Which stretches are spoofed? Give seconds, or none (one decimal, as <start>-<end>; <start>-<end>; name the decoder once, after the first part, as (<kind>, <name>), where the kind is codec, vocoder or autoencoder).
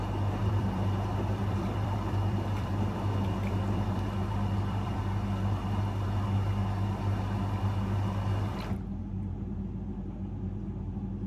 0.4-5.0 (vocoder, BigVGAN v2)